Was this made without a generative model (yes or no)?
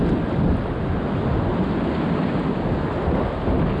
yes